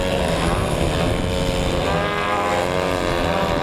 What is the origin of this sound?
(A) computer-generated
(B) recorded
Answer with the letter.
B